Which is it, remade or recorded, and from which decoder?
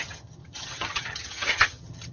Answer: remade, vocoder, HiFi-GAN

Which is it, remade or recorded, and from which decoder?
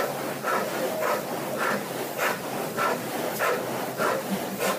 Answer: recorded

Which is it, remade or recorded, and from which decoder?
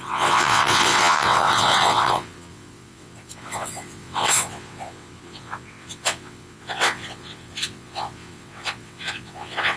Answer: remade, vocoder, WaveNeXt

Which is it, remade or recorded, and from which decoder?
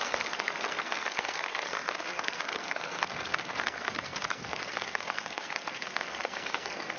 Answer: remade, codec, SNAC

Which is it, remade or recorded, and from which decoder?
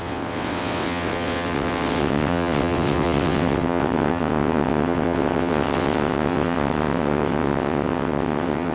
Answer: remade, vocoder, WaveNeXt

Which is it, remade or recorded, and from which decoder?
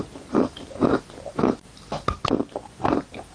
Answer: recorded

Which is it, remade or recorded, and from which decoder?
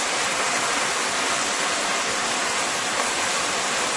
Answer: recorded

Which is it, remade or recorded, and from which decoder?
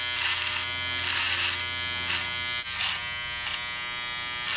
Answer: recorded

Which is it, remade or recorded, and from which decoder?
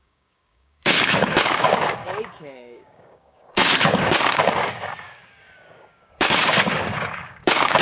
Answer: remade, codec, DAC